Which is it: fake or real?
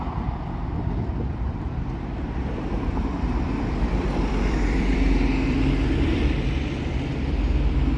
fake